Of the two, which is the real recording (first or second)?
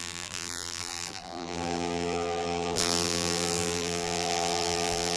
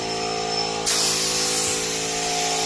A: second